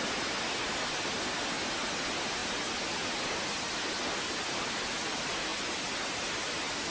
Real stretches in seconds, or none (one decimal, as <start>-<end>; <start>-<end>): 0.0-6.9